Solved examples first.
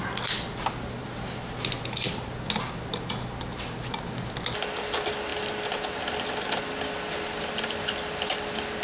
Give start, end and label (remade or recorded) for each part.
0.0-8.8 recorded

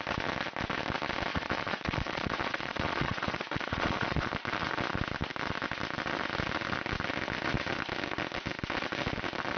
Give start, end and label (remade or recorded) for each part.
0.0-1.3 recorded; 1.3-4.3 remade; 4.3-9.6 recorded